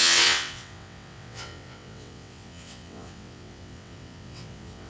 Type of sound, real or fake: fake